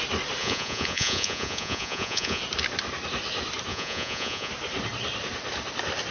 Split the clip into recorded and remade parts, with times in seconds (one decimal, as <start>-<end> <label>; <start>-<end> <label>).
0.0-0.4 recorded; 0.4-2.4 remade; 2.4-3.7 recorded; 3.7-4.5 remade; 4.5-6.1 recorded